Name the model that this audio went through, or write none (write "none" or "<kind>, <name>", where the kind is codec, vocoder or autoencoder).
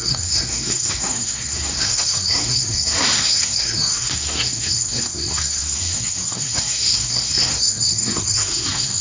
codec, SNAC